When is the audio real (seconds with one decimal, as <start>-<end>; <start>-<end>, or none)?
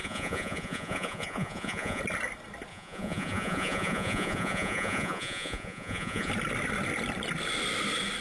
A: 2.0-2.7; 6.3-8.2